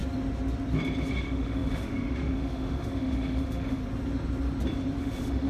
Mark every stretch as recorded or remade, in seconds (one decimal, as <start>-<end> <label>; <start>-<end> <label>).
0.0-1.1 recorded; 1.1-3.8 remade; 3.8-5.0 recorded; 5.0-5.5 remade